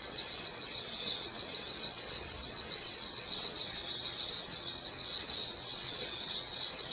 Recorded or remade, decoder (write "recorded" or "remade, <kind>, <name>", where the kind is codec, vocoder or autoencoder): remade, vocoder, WaveNeXt